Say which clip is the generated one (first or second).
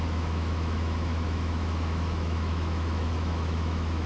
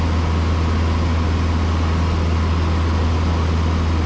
first